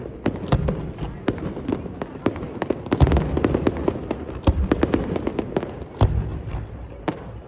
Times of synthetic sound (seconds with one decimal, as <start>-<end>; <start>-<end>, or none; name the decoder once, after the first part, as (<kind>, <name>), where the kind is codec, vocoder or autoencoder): none